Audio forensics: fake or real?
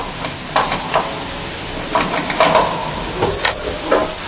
real